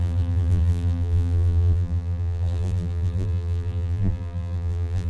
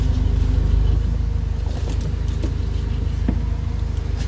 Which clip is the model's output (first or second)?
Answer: first